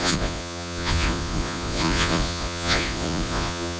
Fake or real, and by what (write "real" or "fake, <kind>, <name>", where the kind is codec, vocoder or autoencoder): fake, vocoder, Vocos